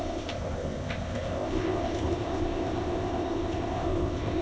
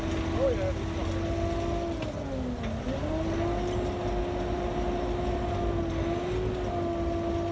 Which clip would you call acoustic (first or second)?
second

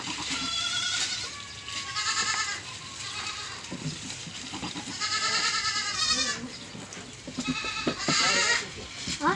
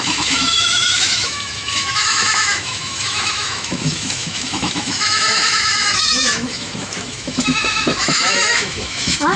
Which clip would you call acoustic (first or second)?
first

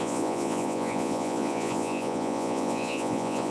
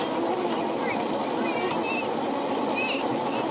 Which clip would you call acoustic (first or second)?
second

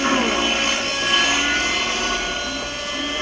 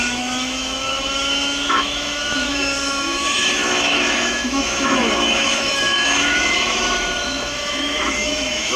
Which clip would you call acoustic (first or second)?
first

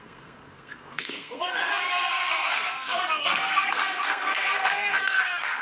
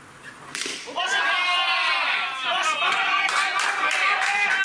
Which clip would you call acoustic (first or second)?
second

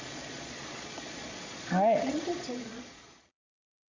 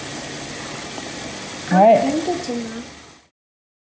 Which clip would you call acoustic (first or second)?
second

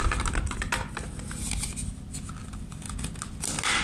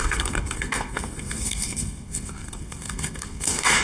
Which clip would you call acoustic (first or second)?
first